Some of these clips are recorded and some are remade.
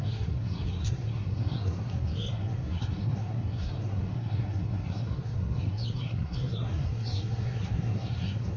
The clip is remade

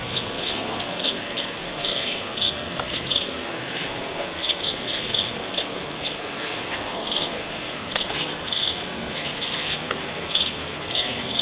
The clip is remade